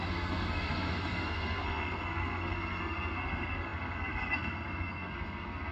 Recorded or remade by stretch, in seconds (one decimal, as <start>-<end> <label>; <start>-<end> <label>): 0.0-5.7 remade